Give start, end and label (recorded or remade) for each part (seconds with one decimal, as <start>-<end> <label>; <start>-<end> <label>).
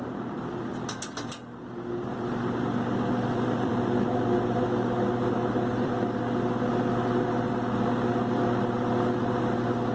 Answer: 0.0-2.1 recorded; 2.1-6.7 remade; 6.7-9.9 recorded